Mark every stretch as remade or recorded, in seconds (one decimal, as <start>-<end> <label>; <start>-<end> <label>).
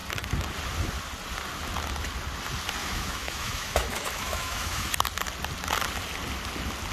0.0-2.8 recorded; 2.8-4.9 remade; 4.9-6.9 recorded